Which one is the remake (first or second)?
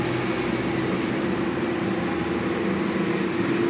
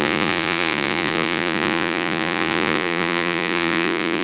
second